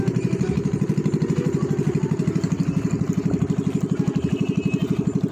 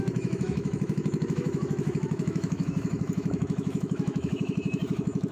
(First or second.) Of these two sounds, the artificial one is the second